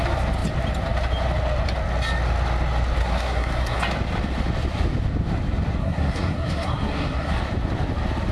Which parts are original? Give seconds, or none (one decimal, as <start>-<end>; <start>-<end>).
0.0-3.0; 3.8-5.8; 7.3-8.3